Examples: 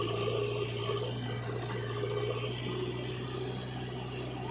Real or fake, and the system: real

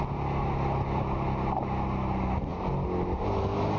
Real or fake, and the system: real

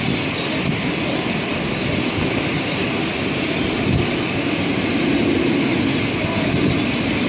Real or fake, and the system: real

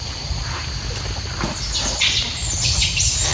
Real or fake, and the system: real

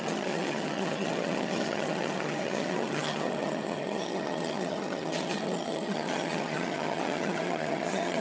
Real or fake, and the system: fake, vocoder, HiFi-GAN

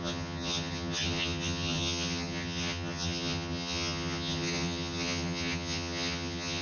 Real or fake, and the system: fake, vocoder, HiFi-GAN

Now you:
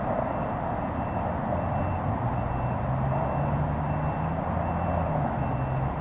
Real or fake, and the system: real